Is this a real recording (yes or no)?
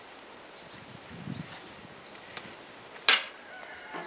yes